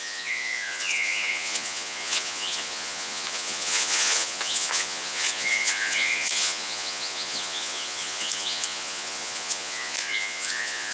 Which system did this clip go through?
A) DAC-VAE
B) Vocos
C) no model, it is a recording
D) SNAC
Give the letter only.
B